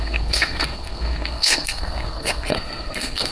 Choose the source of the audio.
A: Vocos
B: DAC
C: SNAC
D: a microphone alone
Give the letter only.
C